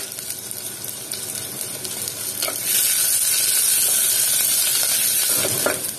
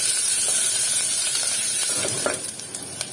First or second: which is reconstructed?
second